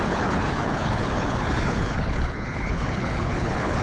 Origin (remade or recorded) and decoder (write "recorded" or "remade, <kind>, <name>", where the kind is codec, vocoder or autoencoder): remade, codec, HILCodec